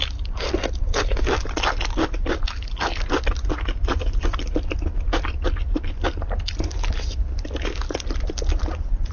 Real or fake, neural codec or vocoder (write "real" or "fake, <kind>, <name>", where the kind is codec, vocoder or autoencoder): real